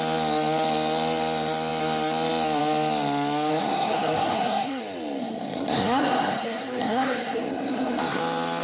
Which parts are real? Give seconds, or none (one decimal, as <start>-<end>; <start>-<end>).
0.0-3.5; 4.8-5.2; 8.2-8.6